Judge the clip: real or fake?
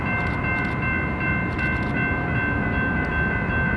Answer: real